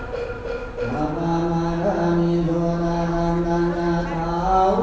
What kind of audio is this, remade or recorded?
recorded